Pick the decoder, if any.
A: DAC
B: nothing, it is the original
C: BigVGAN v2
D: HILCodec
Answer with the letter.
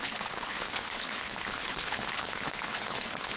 D